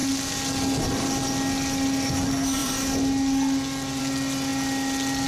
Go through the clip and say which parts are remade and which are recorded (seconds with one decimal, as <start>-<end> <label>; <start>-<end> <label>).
0.0-5.3 recorded